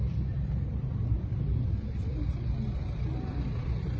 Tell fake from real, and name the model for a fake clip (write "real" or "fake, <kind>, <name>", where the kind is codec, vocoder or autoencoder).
fake, vocoder, BigVGAN v2